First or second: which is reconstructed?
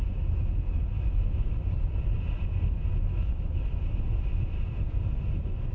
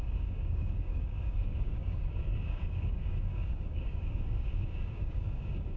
second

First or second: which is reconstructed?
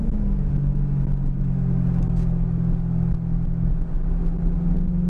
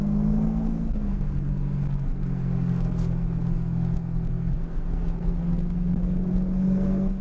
second